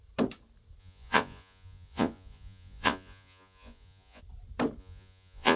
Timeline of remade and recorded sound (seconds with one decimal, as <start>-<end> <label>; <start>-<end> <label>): 0.0-0.8 recorded; 0.8-4.2 remade; 4.2-4.8 recorded; 4.8-5.6 remade